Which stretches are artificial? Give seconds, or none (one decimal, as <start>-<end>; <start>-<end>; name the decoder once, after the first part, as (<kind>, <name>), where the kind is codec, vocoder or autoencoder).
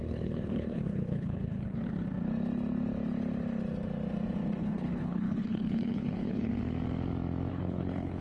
0.0-1.9 (codec, HILCodec); 4.6-6.5; 7.5-8.2